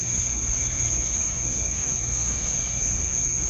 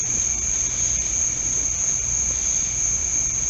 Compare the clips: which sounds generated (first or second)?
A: first